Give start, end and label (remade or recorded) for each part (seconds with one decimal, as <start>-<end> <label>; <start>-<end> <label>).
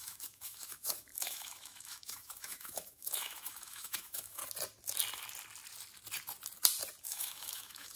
0.0-4.4 remade; 4.4-7.0 recorded; 7.0-8.0 remade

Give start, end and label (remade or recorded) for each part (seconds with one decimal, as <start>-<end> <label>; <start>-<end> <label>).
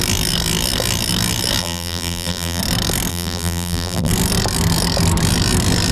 0.0-1.6 recorded; 1.6-2.6 remade; 2.6-3.1 recorded; 3.1-4.1 remade; 4.1-5.9 recorded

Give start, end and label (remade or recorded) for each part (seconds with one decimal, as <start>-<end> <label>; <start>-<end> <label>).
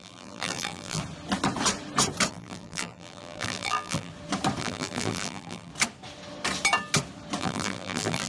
0.0-1.0 remade; 1.0-2.3 recorded; 2.3-4.1 remade; 4.1-4.6 recorded; 4.6-5.7 remade; 5.7-7.4 recorded; 7.4-8.3 remade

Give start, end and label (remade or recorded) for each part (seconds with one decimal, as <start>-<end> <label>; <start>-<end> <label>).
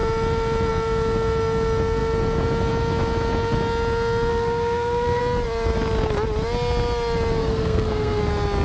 0.0-4.3 recorded; 4.3-5.2 remade; 5.2-7.4 recorded; 7.4-8.2 remade; 8.2-8.6 recorded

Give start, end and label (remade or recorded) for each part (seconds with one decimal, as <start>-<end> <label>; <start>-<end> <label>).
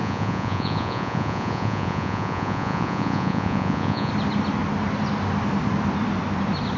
0.0-4.1 remade; 4.1-6.8 recorded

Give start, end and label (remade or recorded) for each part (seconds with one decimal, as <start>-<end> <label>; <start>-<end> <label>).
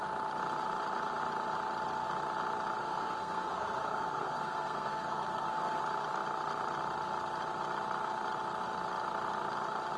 0.0-2.8 recorded; 2.8-5.8 remade; 5.8-10.0 recorded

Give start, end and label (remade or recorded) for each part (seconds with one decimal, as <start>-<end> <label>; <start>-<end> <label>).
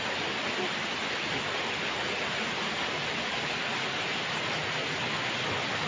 0.0-5.9 recorded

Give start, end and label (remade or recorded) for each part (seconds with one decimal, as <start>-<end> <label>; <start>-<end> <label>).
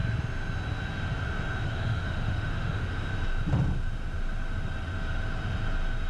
0.0-1.6 recorded; 1.6-3.1 remade; 3.1-6.1 recorded